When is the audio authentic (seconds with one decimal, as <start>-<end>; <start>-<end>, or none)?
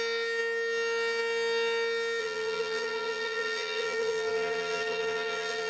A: 0.0-2.2